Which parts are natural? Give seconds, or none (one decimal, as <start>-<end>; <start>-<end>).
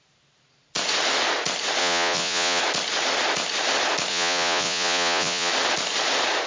0.0-1.8; 2.6-4.1; 5.5-6.5